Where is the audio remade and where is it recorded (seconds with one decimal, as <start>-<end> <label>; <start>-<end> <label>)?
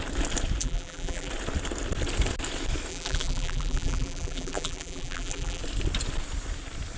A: 0.0-0.6 recorded; 0.6-1.3 remade; 1.3-2.9 recorded; 2.9-5.6 remade; 5.6-7.0 recorded